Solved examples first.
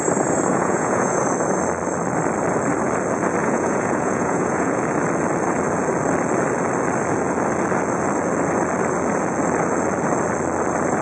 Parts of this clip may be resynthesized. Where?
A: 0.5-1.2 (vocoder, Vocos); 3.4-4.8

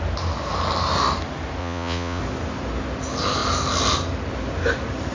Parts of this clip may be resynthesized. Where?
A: 1.6-2.2 (vocoder, Vocos)

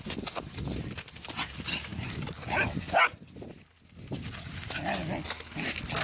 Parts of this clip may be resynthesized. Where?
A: none